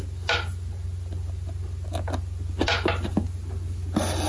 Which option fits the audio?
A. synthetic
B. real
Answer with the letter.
B